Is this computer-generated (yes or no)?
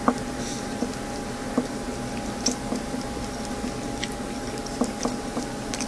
no